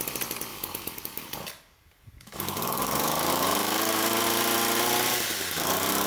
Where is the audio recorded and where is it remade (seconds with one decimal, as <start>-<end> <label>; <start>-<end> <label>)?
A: 0.0-0.5 recorded; 0.5-4.2 remade; 4.2-5.1 recorded; 5.1-6.1 remade